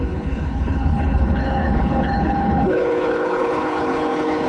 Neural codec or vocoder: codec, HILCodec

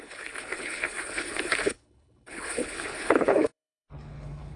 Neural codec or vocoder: codec, HILCodec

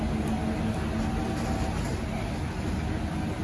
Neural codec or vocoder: none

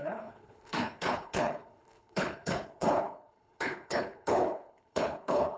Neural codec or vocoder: codec, HILCodec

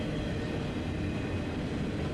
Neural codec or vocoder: none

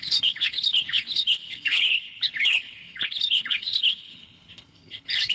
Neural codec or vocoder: codec, HILCodec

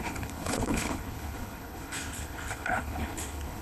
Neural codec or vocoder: codec, HILCodec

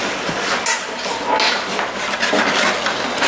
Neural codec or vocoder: none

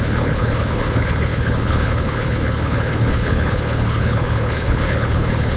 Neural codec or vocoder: codec, HILCodec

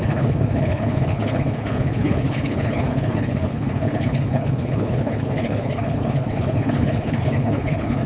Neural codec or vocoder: codec, HILCodec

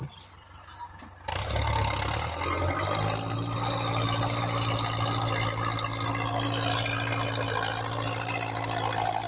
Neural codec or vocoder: none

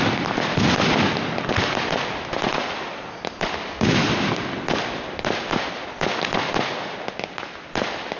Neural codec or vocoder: none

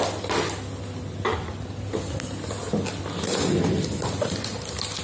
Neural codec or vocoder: none